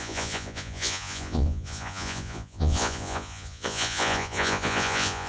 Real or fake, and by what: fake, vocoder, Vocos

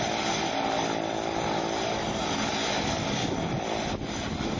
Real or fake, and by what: real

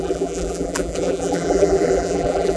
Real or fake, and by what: fake, vocoder, BigVGAN v2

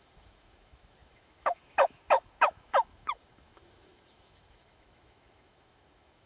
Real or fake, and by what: fake, autoencoder, DAC-VAE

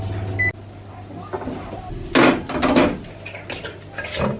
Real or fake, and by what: real